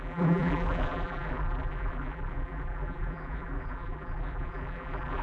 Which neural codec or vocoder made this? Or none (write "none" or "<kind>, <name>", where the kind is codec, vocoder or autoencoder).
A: vocoder, BigVGAN v2